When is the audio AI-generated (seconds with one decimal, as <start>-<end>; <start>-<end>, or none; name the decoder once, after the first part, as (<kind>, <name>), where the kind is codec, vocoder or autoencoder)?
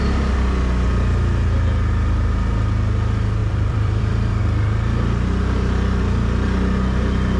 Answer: 3.4-4.4 (vocoder, BigVGAN v2)